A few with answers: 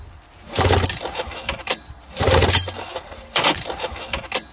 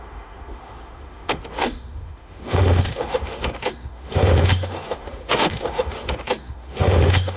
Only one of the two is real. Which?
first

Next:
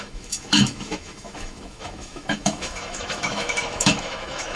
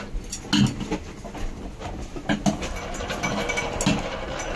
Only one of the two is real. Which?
second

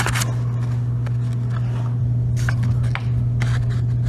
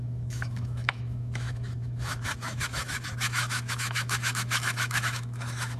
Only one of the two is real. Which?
first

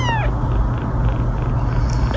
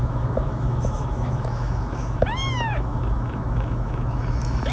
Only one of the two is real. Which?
first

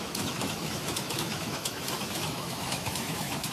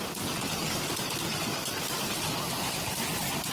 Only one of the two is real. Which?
second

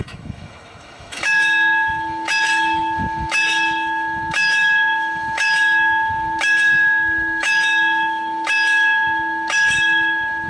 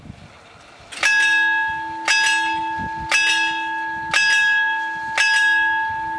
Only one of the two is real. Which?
second